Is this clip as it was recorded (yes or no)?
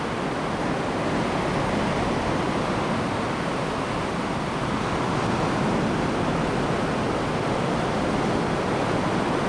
yes